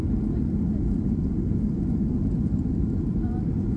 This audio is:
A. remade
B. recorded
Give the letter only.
A